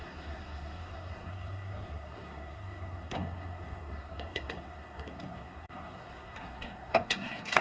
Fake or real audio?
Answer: fake